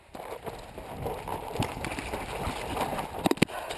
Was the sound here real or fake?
real